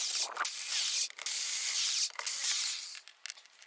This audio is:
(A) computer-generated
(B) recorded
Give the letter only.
B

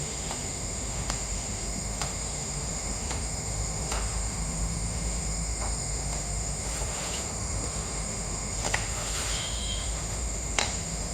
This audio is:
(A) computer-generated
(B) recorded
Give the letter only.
A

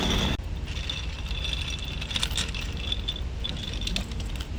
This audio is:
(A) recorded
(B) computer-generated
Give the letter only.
A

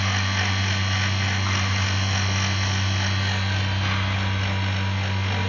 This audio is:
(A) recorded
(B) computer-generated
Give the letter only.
A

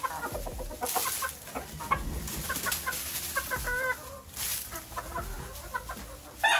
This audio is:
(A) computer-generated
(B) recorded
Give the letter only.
B